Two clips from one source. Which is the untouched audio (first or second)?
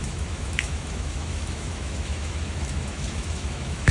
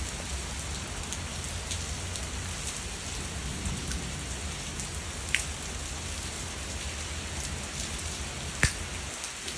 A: second